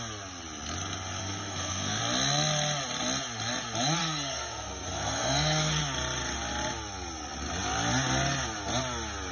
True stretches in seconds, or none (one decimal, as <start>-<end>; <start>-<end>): 0.0-1.2; 2.0-4.0; 5.8-9.3